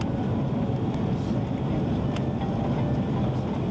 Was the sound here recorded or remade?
recorded